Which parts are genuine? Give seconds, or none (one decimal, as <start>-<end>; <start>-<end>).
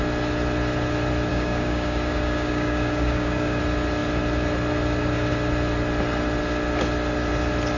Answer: 0.0-1.3; 3.6-7.8